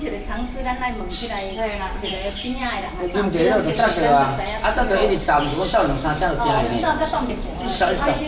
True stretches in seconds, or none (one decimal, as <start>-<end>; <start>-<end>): 0.0-8.3